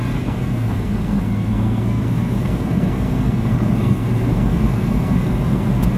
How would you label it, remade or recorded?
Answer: remade